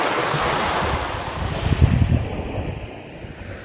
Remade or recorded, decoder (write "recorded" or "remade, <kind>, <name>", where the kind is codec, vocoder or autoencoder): recorded